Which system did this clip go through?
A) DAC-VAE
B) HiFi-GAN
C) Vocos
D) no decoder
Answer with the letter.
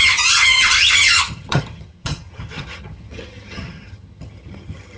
B